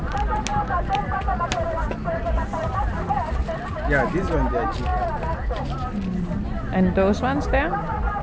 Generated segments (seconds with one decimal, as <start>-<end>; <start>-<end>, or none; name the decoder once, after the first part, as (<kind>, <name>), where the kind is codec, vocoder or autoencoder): 0.5-1.2 (vocoder, BigVGAN v2); 2.0-3.4